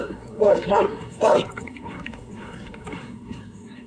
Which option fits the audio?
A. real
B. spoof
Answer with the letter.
B